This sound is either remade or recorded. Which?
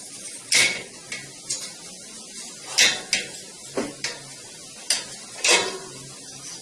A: recorded